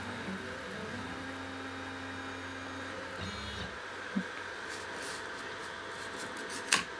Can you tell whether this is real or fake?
real